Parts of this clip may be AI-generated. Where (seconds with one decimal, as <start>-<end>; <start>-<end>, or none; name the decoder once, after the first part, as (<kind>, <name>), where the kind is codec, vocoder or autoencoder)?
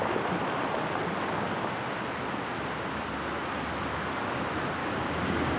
4.8-5.6 (codec, DAC)